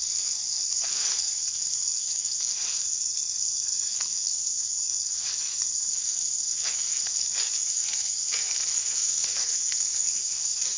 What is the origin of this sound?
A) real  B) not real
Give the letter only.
B